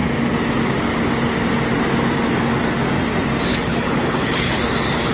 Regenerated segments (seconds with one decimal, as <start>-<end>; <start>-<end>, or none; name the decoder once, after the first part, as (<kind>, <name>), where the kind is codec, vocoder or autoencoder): 3.5-4.6 (codec, HILCodec)